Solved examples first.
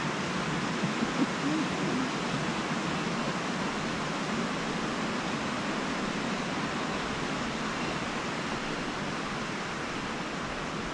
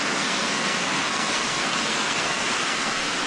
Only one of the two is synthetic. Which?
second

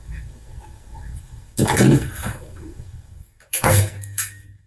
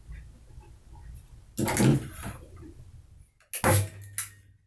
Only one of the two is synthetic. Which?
first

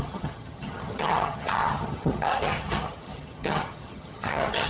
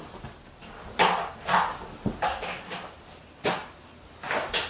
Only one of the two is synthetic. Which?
first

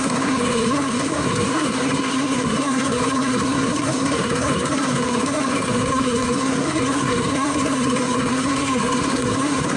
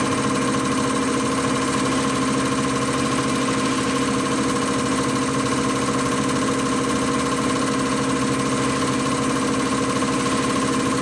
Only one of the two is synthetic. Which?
first